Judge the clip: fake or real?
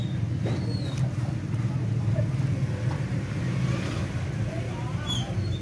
real